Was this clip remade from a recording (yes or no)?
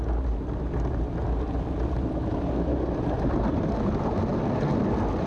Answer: no